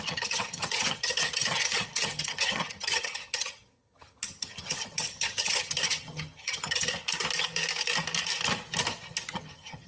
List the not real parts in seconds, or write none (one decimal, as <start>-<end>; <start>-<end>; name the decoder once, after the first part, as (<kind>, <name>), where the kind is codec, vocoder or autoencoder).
0.0-6.9 (vocoder, HiFi-GAN); 9.3-9.9